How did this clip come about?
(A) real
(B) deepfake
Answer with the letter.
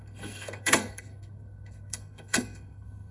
B